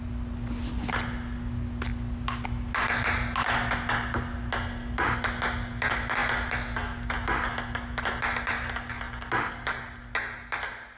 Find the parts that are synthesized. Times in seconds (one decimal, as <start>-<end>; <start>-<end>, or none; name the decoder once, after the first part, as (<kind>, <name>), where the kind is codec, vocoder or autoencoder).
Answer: none